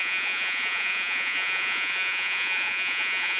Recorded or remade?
remade